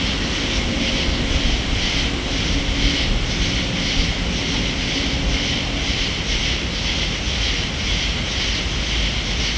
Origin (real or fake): real